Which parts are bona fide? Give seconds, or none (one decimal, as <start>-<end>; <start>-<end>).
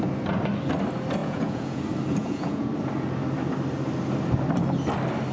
0.0-1.2; 1.8-2.2; 2.7-5.3